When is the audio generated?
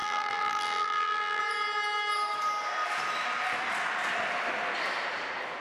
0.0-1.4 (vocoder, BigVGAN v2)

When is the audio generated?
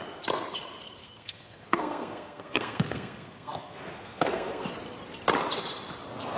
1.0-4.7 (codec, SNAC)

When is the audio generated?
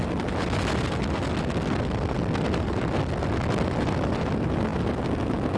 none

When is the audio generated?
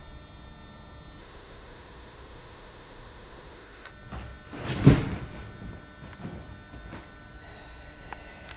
1.2-3.9 (autoencoder, DAC-VAE)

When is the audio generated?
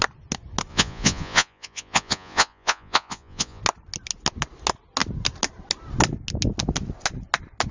0.7-3.6 (vocoder, Vocos)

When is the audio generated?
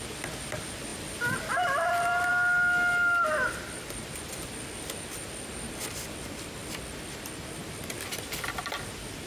0.9-2.3 (vocoder, BigVGAN v2)